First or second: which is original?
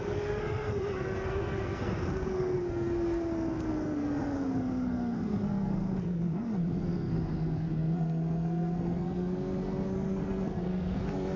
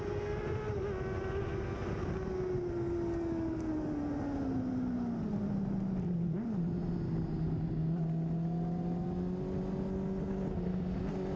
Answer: second